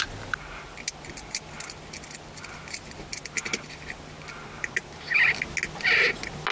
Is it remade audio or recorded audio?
recorded